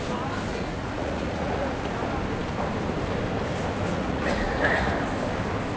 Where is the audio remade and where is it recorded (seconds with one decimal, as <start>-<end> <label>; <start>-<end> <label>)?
0.0-0.5 recorded; 0.5-2.0 remade; 2.0-3.9 recorded; 3.9-4.9 remade; 4.9-5.8 recorded